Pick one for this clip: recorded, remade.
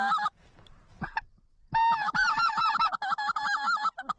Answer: remade